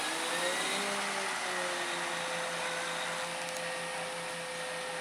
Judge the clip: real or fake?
real